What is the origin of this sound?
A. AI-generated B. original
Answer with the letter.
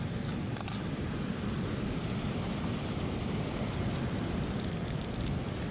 A